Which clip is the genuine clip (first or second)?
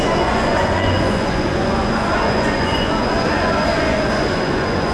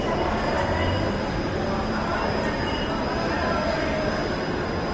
second